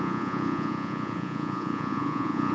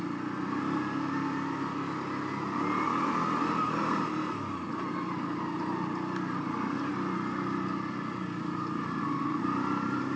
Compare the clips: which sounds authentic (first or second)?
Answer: second